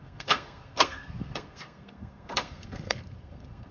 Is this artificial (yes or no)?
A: yes